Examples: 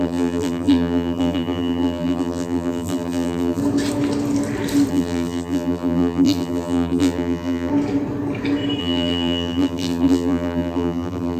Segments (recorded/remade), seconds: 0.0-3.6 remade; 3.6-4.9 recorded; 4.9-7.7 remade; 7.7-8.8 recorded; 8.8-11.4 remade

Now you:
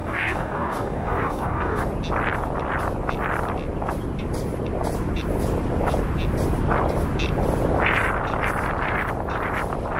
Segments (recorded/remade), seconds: 0.0-1.8 remade; 1.8-10.0 recorded

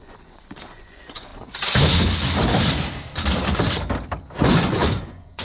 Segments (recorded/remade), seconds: 0.0-1.3 remade; 1.3-4.4 recorded; 4.4-5.4 remade